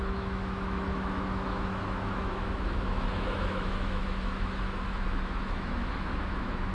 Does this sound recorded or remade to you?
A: remade